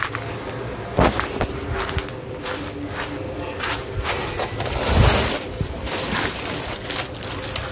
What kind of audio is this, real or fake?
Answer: real